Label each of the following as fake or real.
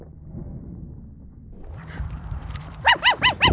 fake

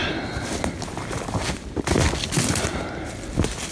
real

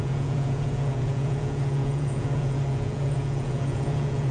fake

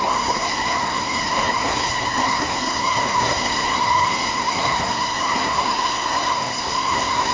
fake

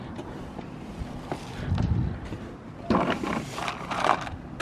real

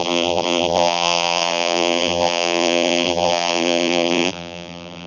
fake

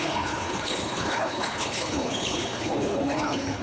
fake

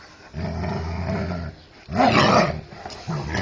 real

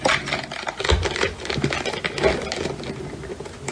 real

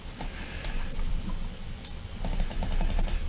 real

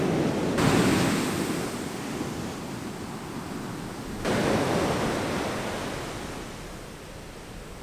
real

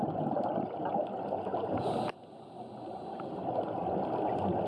real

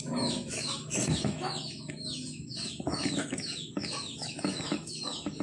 fake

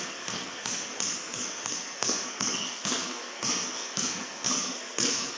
fake